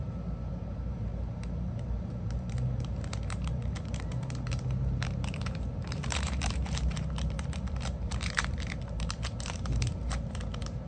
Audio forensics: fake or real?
fake